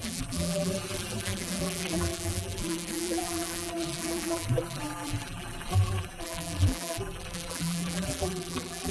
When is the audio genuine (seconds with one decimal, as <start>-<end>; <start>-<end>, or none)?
none